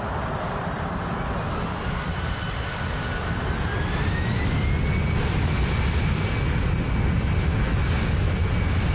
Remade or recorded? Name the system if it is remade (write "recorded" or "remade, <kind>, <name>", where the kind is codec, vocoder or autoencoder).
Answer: recorded